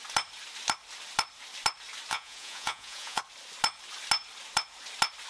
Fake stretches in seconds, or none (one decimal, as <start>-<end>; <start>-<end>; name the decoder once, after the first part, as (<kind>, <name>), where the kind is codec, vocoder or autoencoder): 2.1-3.2 (vocoder, Vocos)